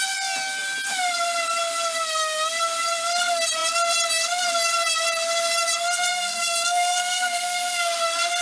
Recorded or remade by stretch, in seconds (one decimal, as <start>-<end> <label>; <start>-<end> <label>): 0.0-6.1 recorded; 6.1-8.0 remade; 8.0-8.4 recorded